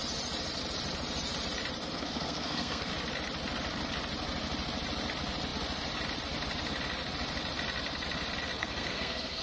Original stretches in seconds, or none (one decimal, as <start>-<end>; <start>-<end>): 0.0-2.0; 2.9-8.6